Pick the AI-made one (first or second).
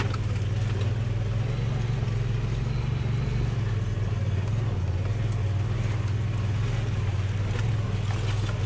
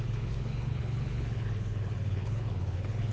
second